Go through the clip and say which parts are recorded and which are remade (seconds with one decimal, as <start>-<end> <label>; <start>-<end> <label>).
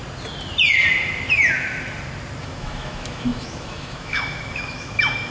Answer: 0.0-2.4 recorded; 2.4-5.3 remade